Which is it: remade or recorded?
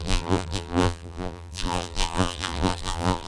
remade